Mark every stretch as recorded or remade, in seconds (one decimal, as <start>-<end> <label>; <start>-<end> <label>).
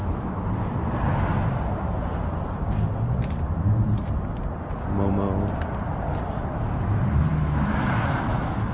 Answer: 0.0-0.5 remade; 0.5-7.3 recorded; 7.3-8.7 remade